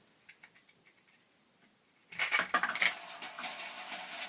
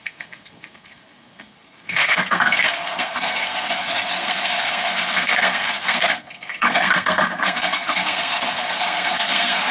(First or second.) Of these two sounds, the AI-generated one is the second